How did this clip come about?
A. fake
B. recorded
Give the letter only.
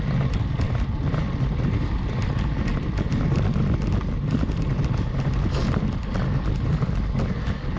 B